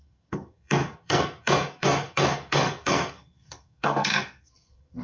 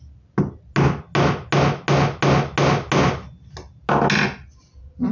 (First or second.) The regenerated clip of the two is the first